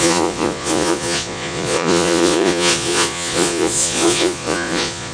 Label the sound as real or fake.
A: fake